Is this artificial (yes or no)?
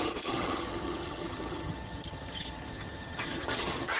yes